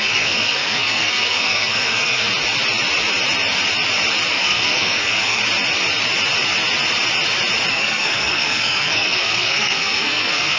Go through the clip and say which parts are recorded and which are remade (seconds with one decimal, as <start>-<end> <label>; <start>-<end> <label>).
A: 0.0-2.3 remade; 2.3-4.3 recorded; 4.3-5.4 remade; 5.4-7.7 recorded; 7.7-10.6 remade